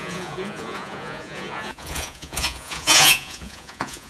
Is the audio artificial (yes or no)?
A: yes